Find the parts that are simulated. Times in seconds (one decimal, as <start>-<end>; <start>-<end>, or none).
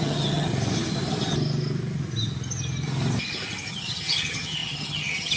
0.0-0.5; 3.7-5.4